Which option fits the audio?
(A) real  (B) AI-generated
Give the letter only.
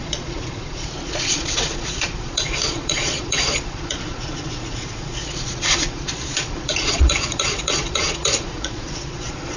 B